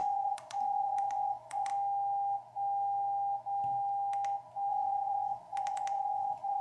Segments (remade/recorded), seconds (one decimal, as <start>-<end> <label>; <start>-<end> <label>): 0.0-1.7 remade; 1.7-4.7 recorded; 4.7-6.6 remade